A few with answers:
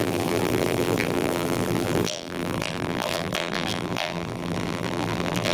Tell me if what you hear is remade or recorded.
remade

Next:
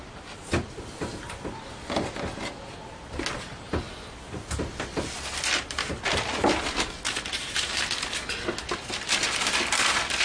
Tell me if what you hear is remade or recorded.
recorded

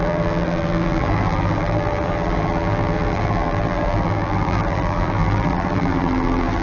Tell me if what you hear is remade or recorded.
remade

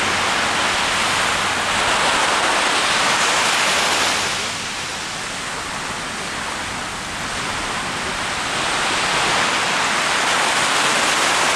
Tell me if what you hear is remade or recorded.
recorded